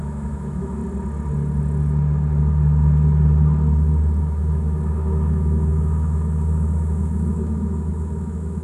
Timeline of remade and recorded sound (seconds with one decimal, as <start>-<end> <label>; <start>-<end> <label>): 0.0-0.8 remade; 0.8-4.2 recorded; 4.2-8.6 remade